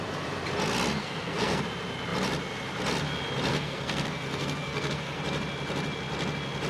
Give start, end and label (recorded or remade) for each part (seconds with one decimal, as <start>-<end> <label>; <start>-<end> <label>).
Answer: 0.0-1.0 recorded; 1.0-1.6 remade; 1.6-3.5 recorded; 3.5-5.2 remade; 5.2-6.7 recorded